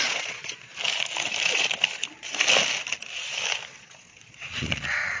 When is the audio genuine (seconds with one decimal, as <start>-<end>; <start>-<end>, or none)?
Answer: 0.7-3.8